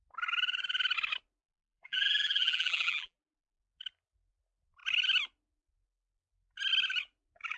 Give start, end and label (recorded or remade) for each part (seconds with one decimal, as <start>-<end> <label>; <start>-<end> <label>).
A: 0.0-1.4 recorded; 1.4-3.6 remade; 3.6-7.6 recorded